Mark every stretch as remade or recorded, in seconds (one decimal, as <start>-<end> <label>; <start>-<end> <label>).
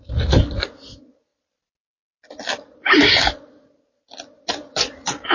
0.0-5.3 recorded